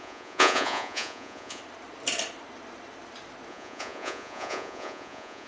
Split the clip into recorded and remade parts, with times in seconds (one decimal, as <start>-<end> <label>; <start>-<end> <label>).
0.0-1.6 remade; 1.6-3.5 recorded; 3.5-5.5 remade